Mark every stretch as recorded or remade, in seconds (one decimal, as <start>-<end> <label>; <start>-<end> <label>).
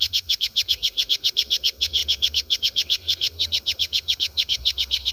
0.0-5.1 remade